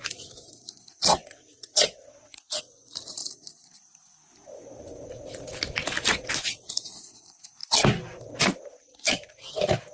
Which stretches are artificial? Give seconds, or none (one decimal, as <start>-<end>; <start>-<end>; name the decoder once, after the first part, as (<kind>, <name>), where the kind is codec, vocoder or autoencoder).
1.1-2.6 (vocoder, WaveNeXt)

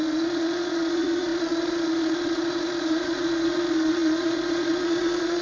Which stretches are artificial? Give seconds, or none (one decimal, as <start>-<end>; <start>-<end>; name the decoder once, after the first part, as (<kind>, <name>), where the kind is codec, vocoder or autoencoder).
0.0-5.4 (vocoder, Vocos)

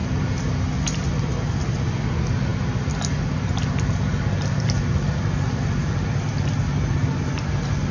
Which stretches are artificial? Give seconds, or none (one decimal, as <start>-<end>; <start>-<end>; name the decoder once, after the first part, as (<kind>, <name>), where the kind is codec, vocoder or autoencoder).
none

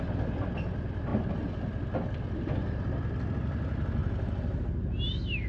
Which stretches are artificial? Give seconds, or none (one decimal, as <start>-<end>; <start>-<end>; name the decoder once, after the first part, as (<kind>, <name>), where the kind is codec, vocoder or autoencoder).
none

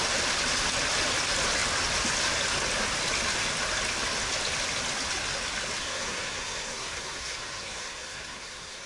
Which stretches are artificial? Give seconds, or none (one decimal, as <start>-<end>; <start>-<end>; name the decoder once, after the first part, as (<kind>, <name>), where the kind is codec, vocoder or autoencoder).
5.8-8.9 (codec, SNAC)

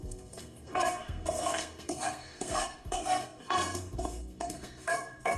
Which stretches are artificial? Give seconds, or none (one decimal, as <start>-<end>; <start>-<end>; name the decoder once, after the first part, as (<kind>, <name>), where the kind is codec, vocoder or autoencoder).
0.0-5.4 (codec, SNAC)

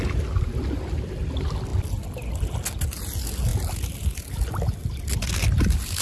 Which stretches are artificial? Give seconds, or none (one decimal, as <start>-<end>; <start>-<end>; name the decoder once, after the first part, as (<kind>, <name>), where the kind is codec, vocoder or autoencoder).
none